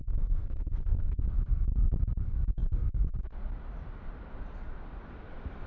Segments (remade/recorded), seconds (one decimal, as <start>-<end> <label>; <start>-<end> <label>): 0.0-1.3 remade; 1.3-5.7 recorded